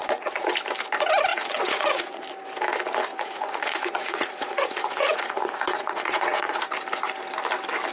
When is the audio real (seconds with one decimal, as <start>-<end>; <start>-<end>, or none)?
0.5-1.3; 2.2-3.1; 6.6-7.9